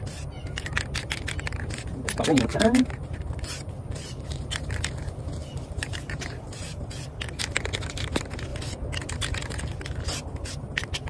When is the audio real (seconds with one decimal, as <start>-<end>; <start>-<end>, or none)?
0.0-2.5; 4.8-5.4; 6.9-11.1